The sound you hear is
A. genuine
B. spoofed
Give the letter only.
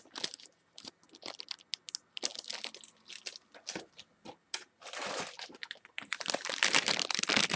A